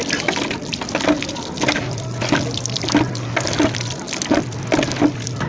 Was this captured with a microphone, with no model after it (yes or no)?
yes